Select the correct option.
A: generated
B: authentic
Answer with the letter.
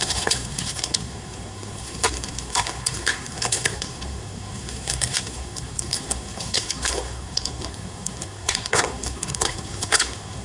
A